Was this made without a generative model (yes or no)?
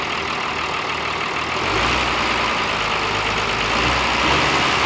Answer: yes